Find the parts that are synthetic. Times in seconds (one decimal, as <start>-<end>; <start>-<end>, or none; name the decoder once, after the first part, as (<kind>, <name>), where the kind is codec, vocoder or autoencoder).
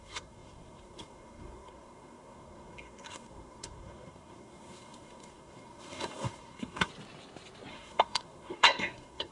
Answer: 0.0-6.9 (codec, SNAC); 7.7-9.3